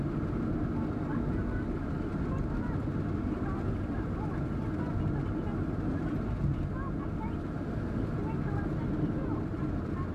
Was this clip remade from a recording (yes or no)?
no